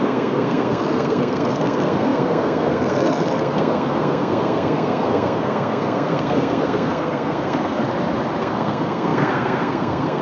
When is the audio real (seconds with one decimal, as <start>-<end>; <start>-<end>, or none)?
7.8-8.4